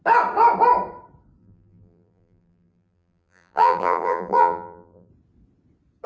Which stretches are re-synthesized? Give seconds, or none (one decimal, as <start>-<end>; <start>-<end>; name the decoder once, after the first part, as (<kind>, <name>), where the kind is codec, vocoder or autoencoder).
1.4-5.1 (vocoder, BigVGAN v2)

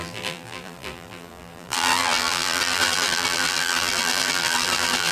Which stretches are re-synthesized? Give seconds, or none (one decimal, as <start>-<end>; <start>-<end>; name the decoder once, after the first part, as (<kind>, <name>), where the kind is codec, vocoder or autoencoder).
0.0-5.1 (vocoder, BigVGAN v2)

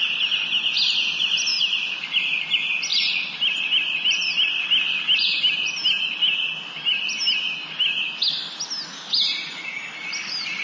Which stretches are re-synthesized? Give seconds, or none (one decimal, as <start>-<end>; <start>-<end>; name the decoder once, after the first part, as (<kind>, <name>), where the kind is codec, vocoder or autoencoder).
1.5-2.4 (vocoder, BigVGAN v2); 2.9-4.6